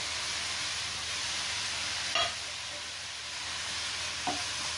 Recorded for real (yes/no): yes